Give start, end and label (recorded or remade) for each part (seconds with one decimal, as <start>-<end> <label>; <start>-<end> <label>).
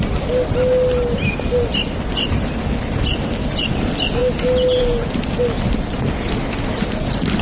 0.0-7.4 recorded